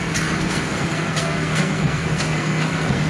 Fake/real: fake